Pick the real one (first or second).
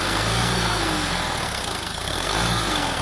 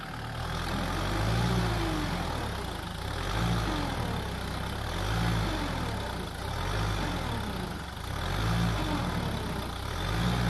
second